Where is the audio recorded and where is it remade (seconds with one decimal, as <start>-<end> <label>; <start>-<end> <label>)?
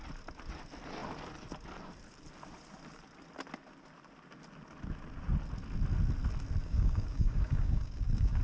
0.0-6.6 recorded; 6.6-8.4 remade